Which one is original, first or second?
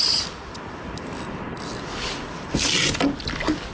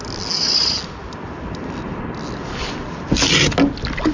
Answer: second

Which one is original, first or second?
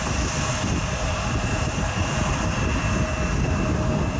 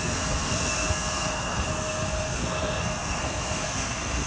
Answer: first